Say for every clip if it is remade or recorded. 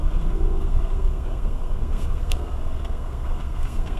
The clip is remade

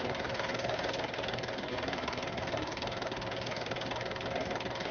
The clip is remade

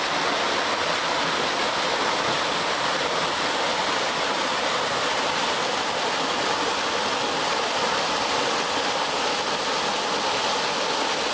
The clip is recorded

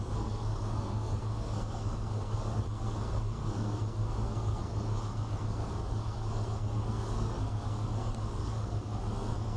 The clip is remade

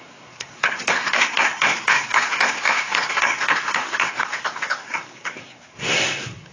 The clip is remade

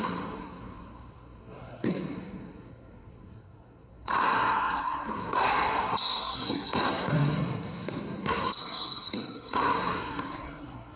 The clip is remade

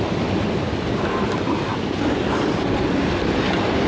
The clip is recorded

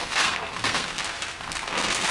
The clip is remade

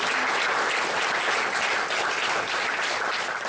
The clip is recorded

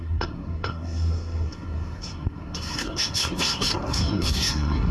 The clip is remade